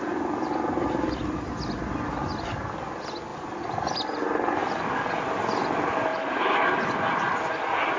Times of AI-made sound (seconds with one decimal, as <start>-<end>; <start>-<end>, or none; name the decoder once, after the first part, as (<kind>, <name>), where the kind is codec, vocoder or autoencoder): none